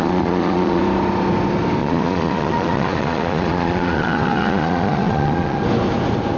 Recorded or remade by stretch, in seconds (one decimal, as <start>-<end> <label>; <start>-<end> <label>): 0.0-0.8 remade; 0.8-1.8 recorded; 1.8-5.6 remade; 5.6-6.4 recorded

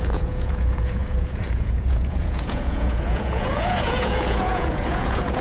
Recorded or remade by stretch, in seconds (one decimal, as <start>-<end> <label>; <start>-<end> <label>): 0.0-5.4 remade

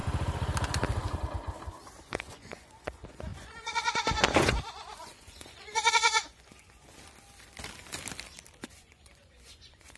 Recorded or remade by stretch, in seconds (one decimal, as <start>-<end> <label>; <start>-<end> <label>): 0.0-2.0 recorded; 2.0-6.9 remade; 6.9-8.6 recorded; 8.6-10.0 remade